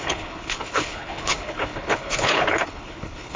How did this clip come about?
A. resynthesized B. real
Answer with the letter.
A